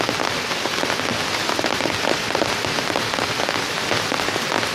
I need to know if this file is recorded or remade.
recorded